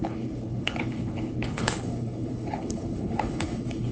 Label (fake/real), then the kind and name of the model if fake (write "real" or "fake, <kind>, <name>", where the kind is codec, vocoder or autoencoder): fake, codec, HILCodec